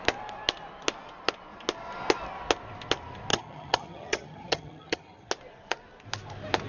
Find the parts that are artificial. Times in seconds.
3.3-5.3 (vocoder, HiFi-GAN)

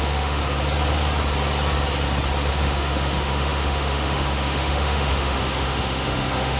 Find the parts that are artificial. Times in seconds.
0.0-0.4 (autoencoder, DAC-VAE); 2.5-6.6

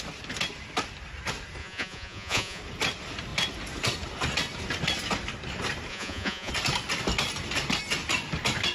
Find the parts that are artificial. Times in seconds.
1.6-2.6 (vocoder, Vocos); 5.9-6.5

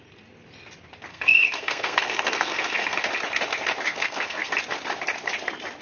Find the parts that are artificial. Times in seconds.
1.1-3.0 (codec, SNAC); 3.9-4.5